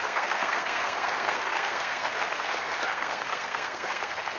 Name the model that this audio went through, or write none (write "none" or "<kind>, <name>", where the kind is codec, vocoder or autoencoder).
codec, SNAC